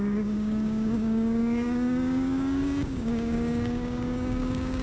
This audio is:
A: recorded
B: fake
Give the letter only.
B